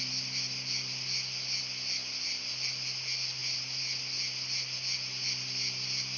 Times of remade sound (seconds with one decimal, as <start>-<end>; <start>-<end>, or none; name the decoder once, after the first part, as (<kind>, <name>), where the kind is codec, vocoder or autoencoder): none